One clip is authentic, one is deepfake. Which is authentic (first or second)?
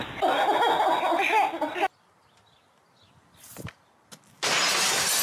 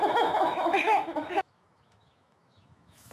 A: first